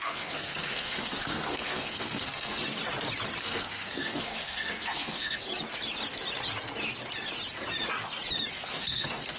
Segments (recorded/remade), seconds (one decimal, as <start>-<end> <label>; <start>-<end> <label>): 0.0-2.6 remade; 2.6-3.4 recorded; 3.4-5.5 remade; 5.5-8.5 recorded; 8.5-9.4 remade